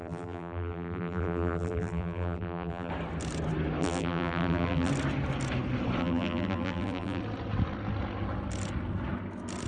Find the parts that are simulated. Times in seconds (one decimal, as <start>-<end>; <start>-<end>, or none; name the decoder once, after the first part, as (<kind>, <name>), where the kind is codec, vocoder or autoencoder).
0.0-2.9 (vocoder, BigVGAN v2); 3.8-4.9; 6.0-7.2